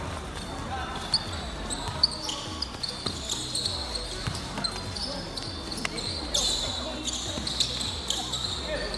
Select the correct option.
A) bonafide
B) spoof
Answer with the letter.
A